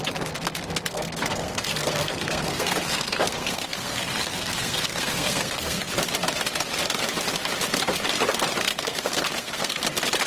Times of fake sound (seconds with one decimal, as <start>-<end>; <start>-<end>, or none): 0.9-5.9; 8.7-9.8